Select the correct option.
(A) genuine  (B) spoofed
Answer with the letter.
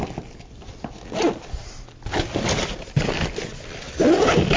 A